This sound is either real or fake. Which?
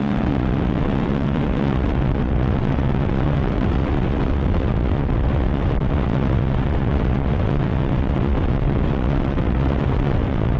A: fake